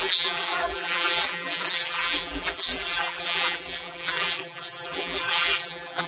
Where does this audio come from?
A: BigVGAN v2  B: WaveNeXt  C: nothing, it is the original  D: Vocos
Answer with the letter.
A